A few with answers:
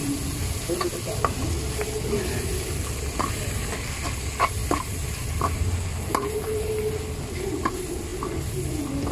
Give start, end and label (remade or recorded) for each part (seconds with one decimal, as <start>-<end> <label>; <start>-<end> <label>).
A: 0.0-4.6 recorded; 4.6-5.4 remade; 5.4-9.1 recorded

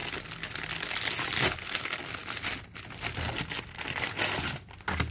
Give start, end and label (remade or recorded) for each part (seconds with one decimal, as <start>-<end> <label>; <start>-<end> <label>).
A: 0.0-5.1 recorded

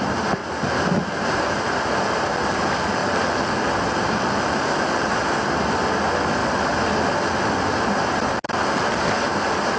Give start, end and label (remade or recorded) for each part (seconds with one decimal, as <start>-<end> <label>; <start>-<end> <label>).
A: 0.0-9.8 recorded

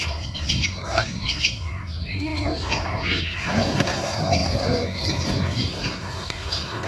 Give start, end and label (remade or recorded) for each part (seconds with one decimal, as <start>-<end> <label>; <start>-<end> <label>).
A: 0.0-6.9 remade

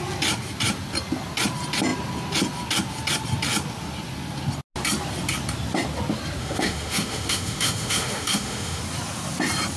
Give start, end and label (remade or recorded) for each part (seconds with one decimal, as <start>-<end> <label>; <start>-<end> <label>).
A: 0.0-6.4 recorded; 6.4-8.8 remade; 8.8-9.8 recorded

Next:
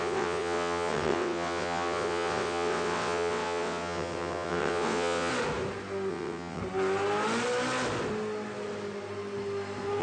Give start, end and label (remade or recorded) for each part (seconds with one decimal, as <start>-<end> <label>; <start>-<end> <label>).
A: 0.0-5.3 remade; 5.3-6.1 recorded; 6.1-6.6 remade; 6.6-10.0 recorded

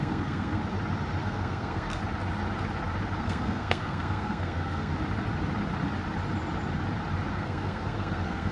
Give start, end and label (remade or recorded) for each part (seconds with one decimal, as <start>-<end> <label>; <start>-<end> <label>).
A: 0.0-0.6 remade; 0.6-1.2 recorded; 1.2-2.0 remade; 2.0-3.2 recorded; 3.2-4.9 remade; 4.9-7.3 recorded; 7.3-8.5 remade

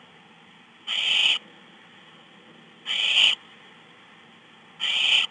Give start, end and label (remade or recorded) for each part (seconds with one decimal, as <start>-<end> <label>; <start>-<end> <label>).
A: 0.0-5.3 recorded